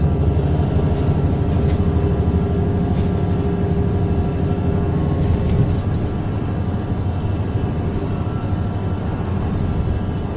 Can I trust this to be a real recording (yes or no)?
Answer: yes